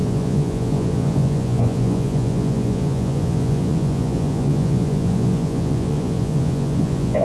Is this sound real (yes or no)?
no